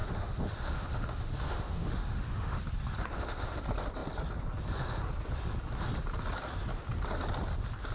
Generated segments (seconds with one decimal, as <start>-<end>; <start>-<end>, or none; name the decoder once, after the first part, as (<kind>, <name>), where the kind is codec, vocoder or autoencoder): 0.0-2.6 (autoencoder, DAC-VAE); 3.1-3.6